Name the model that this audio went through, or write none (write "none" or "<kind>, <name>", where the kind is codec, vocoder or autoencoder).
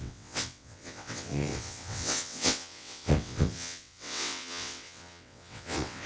vocoder, WaveNeXt